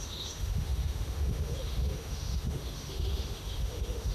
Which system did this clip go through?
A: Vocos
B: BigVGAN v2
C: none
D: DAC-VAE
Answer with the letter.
D